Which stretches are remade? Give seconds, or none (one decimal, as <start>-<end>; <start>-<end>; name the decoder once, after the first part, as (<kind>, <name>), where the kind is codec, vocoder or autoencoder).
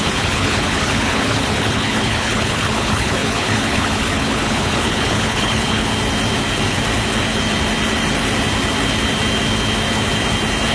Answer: 0.0-5.9 (codec, HILCodec)